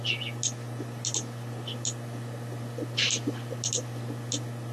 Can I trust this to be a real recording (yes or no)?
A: yes